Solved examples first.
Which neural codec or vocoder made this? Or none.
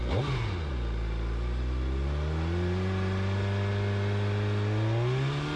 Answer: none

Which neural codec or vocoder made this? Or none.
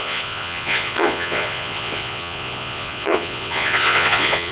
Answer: vocoder, Vocos